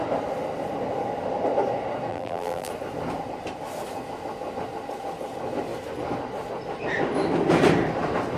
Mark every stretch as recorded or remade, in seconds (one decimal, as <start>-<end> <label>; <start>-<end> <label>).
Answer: 0.0-2.1 recorded; 2.1-2.7 remade; 2.7-8.4 recorded

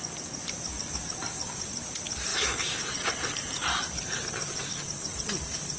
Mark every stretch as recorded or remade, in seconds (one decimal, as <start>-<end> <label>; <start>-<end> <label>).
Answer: 0.0-2.3 recorded; 2.3-5.8 remade

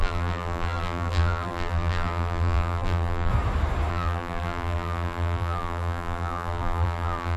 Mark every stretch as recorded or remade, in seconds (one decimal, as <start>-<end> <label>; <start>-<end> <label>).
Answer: 0.0-3.3 remade; 3.3-3.9 recorded; 3.9-7.4 remade

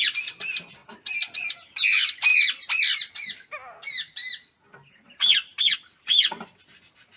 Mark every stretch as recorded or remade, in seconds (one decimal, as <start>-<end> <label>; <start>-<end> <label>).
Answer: 0.0-0.8 remade; 0.8-1.5 recorded; 1.5-2.3 remade; 2.3-5.6 recorded; 5.6-7.2 remade

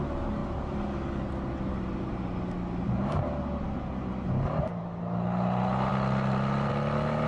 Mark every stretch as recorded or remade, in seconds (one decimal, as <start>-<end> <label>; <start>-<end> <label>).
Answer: 0.0-7.3 recorded

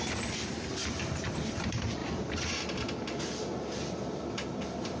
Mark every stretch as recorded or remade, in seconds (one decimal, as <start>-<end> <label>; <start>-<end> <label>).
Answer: 0.0-2.0 remade; 2.0-4.3 recorded; 4.3-5.0 remade

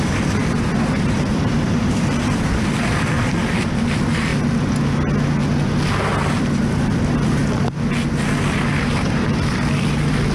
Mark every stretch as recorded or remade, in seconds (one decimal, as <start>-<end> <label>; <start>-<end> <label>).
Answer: 0.0-4.3 remade; 4.3-6.4 recorded; 6.4-7.4 remade; 7.4-8.7 recorded; 8.7-10.3 remade